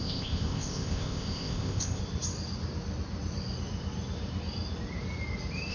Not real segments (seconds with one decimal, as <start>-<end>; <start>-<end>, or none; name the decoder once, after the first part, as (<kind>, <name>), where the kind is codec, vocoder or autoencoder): 0.0-2.0 (codec, ZipCodec)